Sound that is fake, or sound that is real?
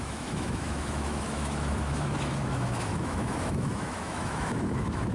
fake